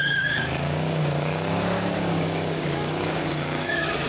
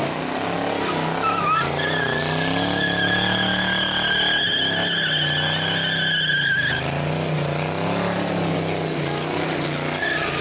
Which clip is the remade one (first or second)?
first